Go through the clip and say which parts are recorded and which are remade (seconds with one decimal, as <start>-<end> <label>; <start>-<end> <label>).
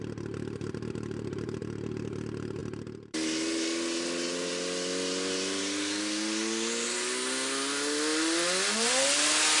0.0-9.6 recorded